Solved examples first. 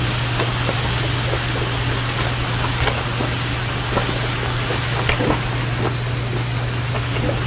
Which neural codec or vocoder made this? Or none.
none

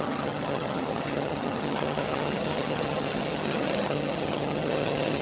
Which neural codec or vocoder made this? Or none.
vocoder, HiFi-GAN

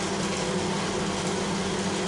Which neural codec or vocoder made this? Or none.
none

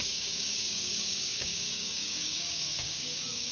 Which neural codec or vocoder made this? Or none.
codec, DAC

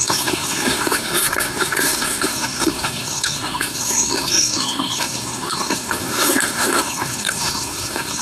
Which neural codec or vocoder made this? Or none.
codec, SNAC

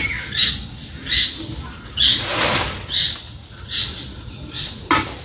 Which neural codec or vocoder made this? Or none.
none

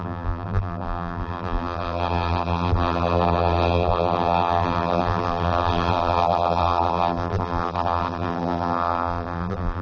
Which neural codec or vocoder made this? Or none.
vocoder, BigVGAN v2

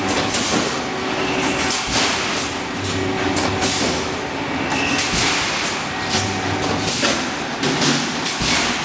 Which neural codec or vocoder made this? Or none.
none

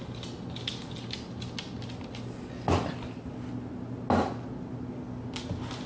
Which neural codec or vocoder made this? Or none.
none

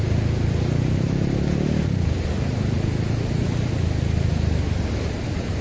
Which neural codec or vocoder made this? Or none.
none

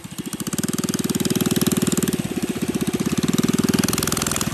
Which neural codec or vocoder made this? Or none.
none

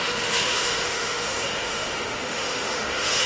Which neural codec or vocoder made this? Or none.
autoencoder, DAC-VAE